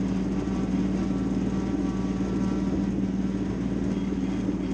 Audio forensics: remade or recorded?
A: recorded